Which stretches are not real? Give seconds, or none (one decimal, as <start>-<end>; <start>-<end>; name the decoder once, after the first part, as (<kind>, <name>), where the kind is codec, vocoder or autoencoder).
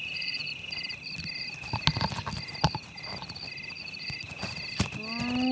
0.0-0.5 (vocoder, Vocos); 3.8-4.4